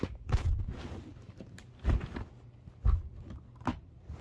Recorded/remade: recorded